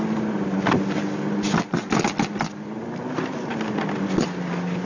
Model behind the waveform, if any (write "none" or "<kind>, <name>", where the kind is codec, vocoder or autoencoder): none